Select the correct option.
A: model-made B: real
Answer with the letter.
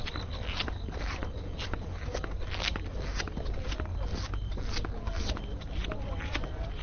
B